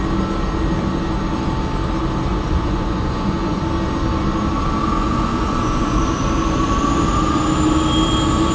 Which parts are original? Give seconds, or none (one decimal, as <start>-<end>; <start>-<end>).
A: 0.0-2.3; 3.6-5.0; 6.0-8.5